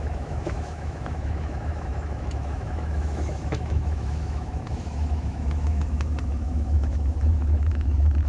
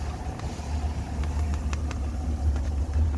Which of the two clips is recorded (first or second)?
second